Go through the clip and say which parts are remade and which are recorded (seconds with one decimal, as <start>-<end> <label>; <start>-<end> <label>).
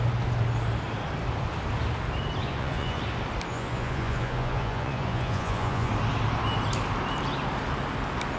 0.0-2.4 recorded; 2.4-3.0 remade; 3.0-3.5 recorded; 3.5-5.9 remade; 5.9-8.4 recorded